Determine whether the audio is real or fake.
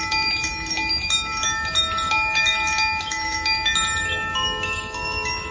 real